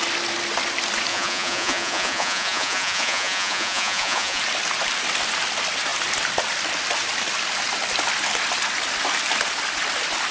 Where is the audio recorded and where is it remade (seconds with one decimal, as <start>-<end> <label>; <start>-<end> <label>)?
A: 0.0-1.1 recorded; 1.1-4.4 remade; 4.4-10.3 recorded